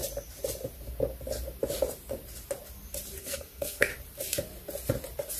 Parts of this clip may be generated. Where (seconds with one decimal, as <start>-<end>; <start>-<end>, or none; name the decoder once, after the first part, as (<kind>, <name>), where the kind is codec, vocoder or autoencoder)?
3.2-3.9 (codec, SNAC)